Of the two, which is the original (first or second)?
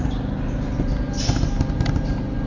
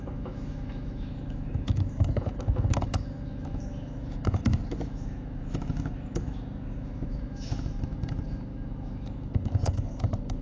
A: first